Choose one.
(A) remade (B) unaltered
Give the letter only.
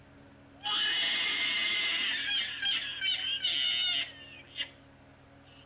B